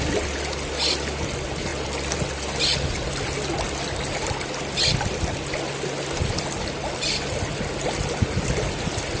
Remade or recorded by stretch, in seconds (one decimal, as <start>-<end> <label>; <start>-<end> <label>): 0.0-9.2 recorded